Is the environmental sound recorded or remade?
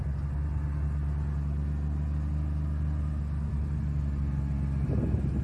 recorded